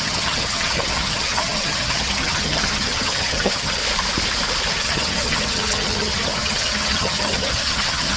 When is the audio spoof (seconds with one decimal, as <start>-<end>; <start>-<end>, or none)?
0.0-3.8; 4.7-8.2